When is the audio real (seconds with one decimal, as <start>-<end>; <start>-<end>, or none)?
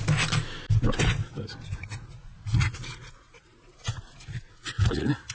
0.0-1.7